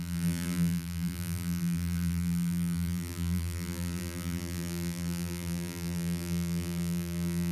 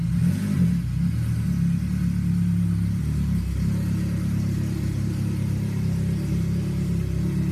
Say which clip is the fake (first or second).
first